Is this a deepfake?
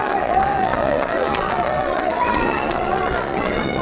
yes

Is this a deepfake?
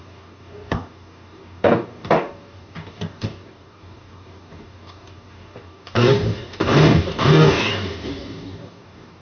yes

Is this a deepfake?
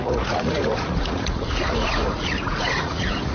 yes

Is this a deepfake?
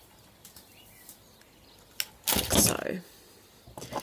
no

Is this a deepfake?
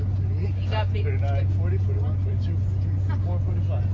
no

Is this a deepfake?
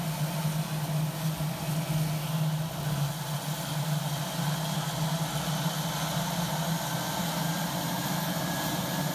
no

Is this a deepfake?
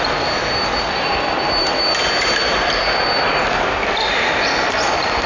yes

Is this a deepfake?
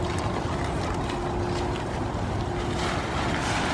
no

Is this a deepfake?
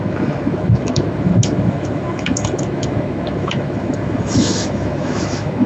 yes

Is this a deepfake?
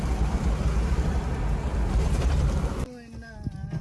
no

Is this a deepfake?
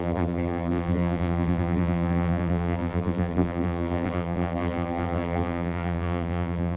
yes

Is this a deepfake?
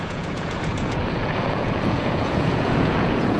yes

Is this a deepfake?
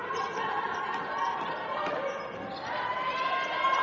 no